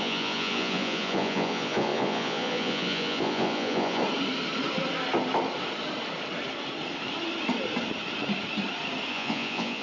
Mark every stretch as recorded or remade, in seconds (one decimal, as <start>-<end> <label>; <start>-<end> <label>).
0.0-4.0 remade; 4.0-9.1 recorded; 9.1-9.8 remade